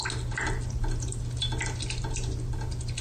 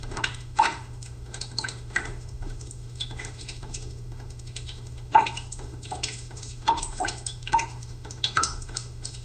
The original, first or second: first